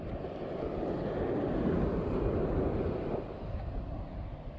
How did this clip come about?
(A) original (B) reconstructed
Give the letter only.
A